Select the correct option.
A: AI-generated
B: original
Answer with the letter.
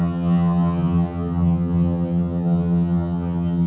A